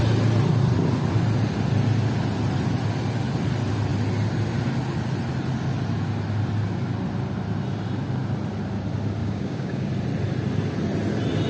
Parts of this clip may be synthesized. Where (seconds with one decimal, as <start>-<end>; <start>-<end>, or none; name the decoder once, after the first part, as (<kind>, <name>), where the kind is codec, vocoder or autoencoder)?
9.2-9.9 (codec, DAC)